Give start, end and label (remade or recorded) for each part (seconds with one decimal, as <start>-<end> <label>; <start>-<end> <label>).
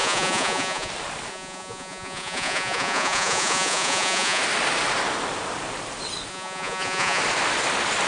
0.0-0.9 remade; 0.9-1.3 recorded; 1.3-4.4 remade; 4.4-6.3 recorded; 6.3-7.2 remade; 7.2-8.1 recorded